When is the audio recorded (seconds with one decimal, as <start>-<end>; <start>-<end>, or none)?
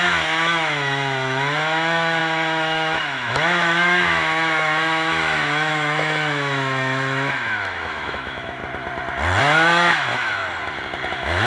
8.6-9.4; 10.4-11.1